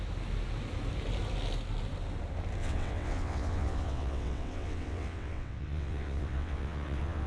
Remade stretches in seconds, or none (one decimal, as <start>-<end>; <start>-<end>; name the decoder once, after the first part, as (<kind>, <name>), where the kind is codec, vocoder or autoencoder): 2.6-7.3 (vocoder, WaveNeXt)